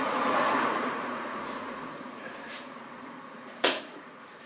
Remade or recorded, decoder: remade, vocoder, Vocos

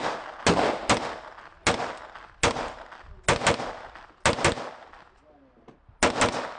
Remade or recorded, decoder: recorded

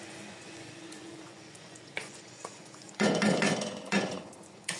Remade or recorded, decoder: remade, vocoder, Vocos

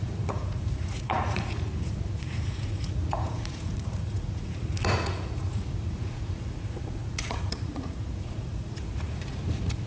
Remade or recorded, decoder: remade, vocoder, Vocos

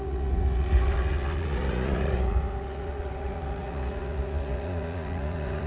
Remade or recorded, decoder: remade, vocoder, Vocos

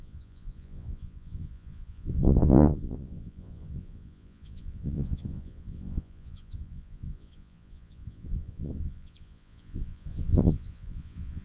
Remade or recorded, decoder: remade, vocoder, Vocos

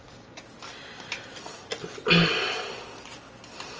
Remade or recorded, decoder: recorded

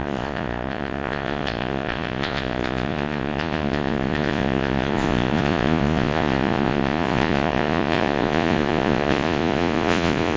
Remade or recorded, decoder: remade, vocoder, Vocos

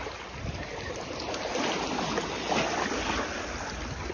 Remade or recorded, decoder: recorded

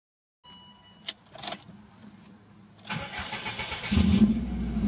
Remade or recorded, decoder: recorded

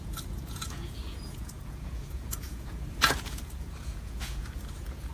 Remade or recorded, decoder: remade, vocoder, Vocos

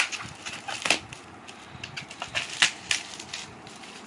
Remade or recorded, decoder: recorded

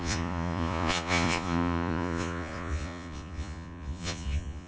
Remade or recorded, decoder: remade, vocoder, Vocos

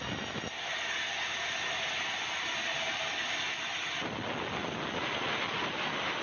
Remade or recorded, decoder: recorded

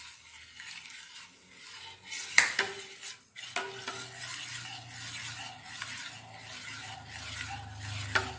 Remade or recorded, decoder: recorded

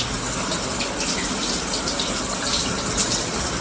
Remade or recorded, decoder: recorded